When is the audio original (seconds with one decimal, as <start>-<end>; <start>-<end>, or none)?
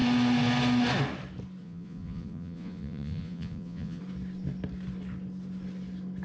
0.0-1.6; 4.0-6.2